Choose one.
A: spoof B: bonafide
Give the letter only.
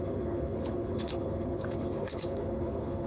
A